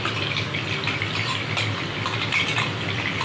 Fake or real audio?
real